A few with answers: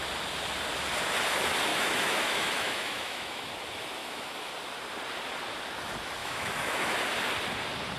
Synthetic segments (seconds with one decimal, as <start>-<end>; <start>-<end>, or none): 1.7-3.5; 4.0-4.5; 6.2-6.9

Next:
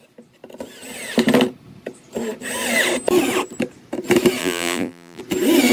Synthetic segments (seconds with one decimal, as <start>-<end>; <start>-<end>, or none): 4.4-5.2

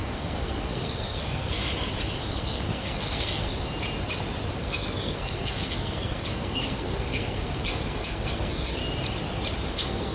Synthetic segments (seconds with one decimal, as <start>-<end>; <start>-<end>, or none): 0.0-1.6; 2.3-3.5; 4.6-8.8; 9.7-10.1